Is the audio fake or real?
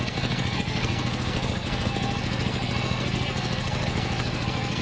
fake